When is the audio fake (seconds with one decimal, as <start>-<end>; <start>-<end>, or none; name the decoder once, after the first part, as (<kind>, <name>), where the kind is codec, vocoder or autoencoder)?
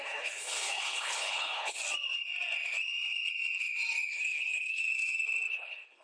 0.0-1.8 (codec, HILCodec); 4.1-4.8; 5.5-6.0